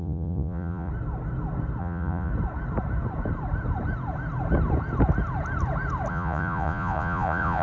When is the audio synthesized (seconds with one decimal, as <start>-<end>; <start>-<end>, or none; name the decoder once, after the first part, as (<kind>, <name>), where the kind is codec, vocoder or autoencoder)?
0.0-0.9 (vocoder, Vocos); 1.8-2.3; 6.1-7.6